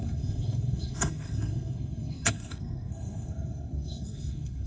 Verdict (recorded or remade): remade